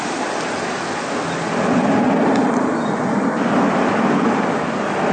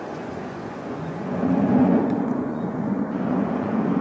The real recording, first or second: first